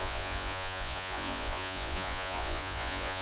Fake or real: fake